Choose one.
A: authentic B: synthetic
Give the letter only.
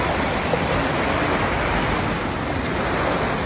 A